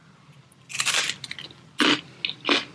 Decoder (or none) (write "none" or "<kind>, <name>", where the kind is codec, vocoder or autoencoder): none